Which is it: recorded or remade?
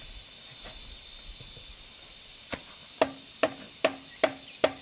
recorded